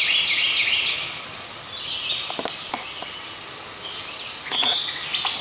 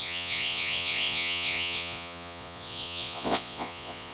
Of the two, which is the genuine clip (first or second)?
first